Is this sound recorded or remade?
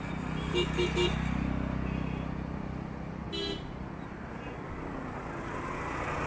recorded